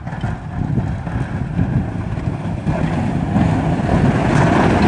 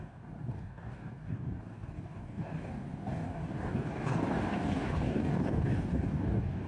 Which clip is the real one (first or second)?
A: first